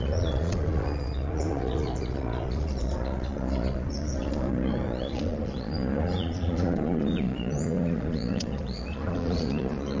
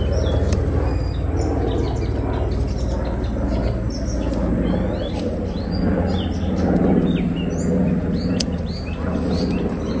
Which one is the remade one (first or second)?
first